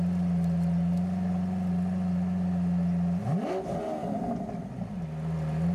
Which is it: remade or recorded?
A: recorded